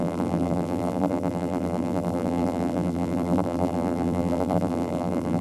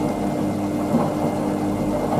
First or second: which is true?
second